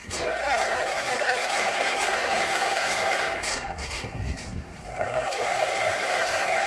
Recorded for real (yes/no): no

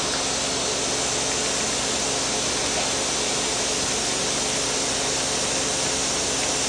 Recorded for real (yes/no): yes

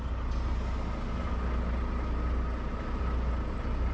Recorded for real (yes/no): yes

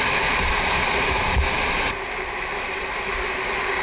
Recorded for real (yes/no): yes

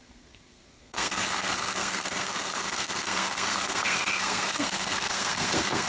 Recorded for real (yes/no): no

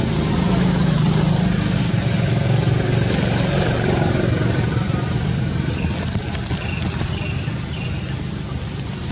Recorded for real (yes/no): yes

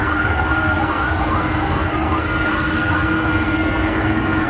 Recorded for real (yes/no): no